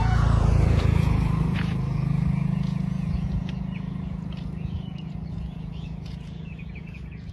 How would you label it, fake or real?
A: fake